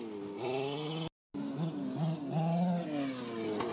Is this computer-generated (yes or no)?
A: no